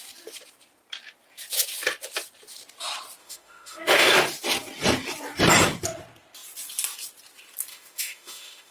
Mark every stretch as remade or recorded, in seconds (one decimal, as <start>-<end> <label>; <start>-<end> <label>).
0.0-3.2 recorded; 3.2-4.1 remade; 4.1-7.7 recorded; 7.7-8.7 remade